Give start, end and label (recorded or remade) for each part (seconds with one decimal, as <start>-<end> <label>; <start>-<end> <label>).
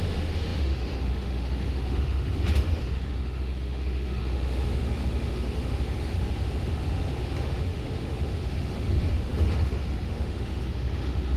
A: 0.0-11.4 remade